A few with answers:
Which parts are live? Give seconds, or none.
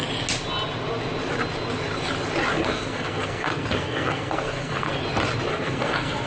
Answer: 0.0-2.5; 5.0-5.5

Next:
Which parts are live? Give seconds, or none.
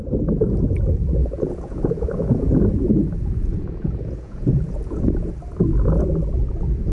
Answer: 0.0-1.2; 5.3-6.9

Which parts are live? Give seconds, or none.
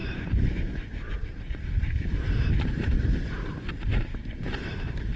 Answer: 3.1-3.9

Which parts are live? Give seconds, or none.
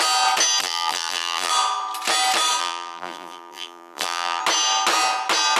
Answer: 0.0-0.6; 1.5-2.6; 4.4-5.6